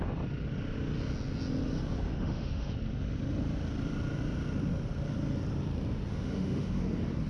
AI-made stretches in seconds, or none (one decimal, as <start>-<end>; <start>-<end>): 2.1-2.7; 6.1-6.8